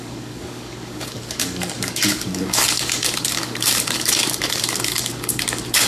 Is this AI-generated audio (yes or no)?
yes